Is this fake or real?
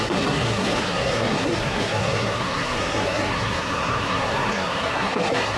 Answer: fake